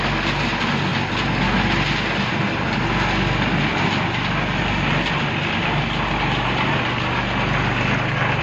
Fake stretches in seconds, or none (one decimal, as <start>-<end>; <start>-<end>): none